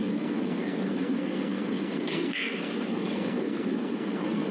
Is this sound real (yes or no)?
no